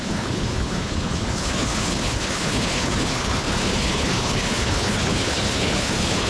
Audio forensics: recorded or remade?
remade